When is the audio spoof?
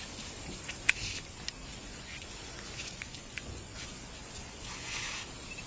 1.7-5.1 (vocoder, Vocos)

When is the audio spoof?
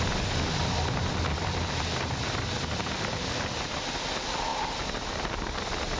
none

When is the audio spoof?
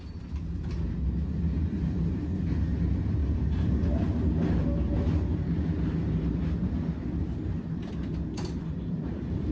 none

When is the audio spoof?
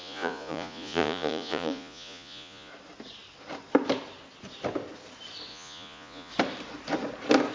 0.0-2.7 (vocoder, Vocos); 5.5-6.3